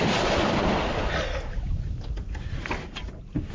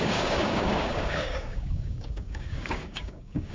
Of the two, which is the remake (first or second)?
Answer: second